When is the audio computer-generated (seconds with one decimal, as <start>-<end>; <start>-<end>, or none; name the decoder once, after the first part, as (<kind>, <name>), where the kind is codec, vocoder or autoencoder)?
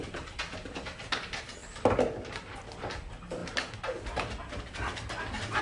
none